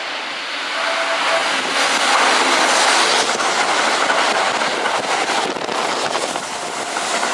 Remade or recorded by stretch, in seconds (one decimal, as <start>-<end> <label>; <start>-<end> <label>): 0.0-7.3 recorded